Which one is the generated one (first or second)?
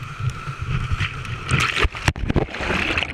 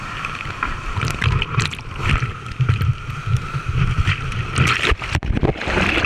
second